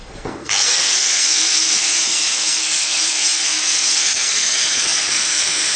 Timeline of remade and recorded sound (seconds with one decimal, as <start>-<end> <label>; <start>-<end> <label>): 0.0-5.8 remade